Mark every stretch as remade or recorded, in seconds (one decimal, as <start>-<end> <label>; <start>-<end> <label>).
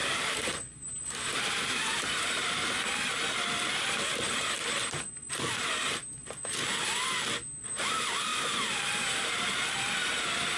0.0-2.5 remade; 2.5-8.3 recorded; 8.3-9.9 remade; 9.9-10.6 recorded